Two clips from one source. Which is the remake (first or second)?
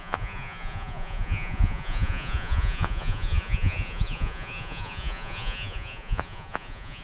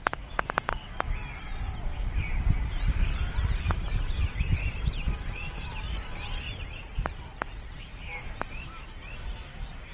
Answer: first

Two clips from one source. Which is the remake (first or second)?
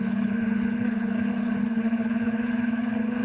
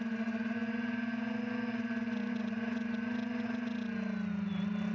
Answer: first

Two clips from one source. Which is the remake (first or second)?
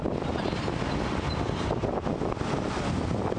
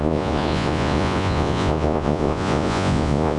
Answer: second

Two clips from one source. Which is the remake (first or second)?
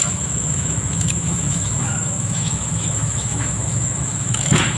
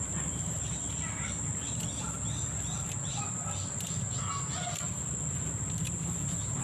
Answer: first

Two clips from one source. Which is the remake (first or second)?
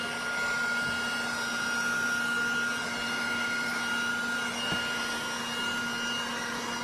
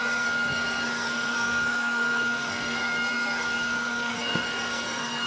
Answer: second